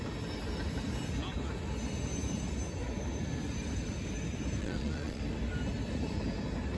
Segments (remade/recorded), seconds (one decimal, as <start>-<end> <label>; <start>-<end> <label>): 0.0-4.6 recorded; 4.6-5.2 remade; 5.2-6.8 recorded